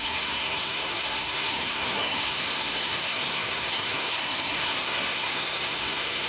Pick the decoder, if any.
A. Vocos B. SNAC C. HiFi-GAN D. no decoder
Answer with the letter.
B